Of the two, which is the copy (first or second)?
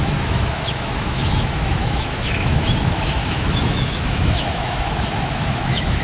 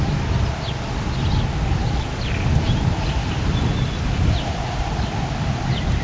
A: first